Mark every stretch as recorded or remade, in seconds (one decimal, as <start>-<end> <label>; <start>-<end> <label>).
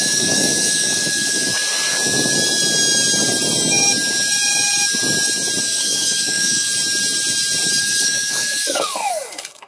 0.0-1.5 remade; 1.5-5.6 recorded; 5.6-6.7 remade; 6.7-7.8 recorded; 7.8-9.7 remade